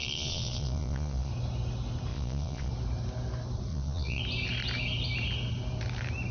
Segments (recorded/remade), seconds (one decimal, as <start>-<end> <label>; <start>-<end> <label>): 0.0-1.3 remade; 1.3-2.1 recorded; 2.1-2.7 remade; 2.7-3.7 recorded; 3.7-4.2 remade; 4.2-6.3 recorded